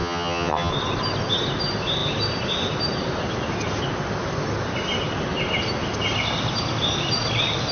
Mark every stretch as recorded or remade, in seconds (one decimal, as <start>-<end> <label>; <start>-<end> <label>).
0.0-0.7 remade; 0.7-7.7 recorded